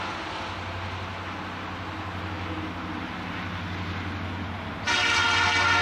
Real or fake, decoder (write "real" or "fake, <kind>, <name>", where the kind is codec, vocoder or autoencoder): real